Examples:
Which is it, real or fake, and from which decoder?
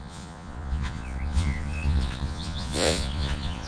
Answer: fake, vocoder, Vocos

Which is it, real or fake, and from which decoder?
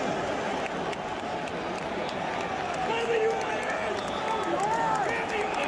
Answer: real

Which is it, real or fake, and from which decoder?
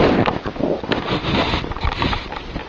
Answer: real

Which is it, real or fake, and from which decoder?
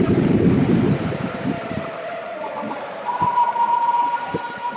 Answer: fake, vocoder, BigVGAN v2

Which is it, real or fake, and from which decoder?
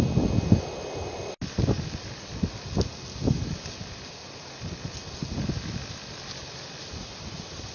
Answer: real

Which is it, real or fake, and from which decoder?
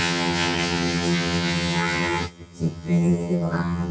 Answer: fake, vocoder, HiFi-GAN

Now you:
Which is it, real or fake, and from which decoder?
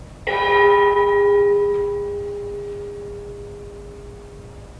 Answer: real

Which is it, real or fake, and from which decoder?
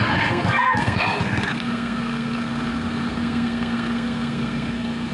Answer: fake, codec, SNAC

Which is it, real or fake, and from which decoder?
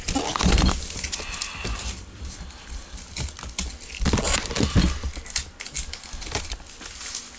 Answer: real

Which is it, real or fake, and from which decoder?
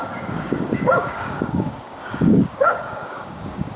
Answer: fake, codec, DAC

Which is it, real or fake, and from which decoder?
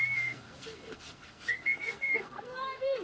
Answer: fake, codec, SNAC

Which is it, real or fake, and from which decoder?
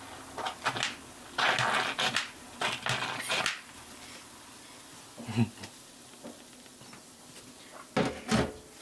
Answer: real